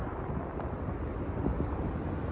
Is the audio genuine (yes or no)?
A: yes